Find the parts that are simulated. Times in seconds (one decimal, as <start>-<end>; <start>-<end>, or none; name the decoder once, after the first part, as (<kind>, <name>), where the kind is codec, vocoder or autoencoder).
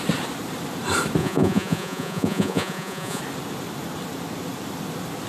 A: 1.2-3.2 (vocoder, Vocos)